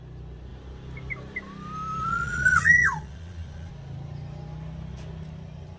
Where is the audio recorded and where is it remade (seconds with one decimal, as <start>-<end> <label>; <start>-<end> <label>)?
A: 0.0-2.0 recorded; 2.0-3.7 remade; 3.7-5.8 recorded